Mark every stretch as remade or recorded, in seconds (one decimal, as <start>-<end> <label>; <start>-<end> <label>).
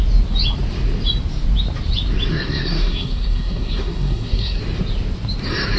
0.0-2.3 recorded; 2.3-4.6 remade; 4.6-5.8 recorded